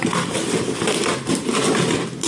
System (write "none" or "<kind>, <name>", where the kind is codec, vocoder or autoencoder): none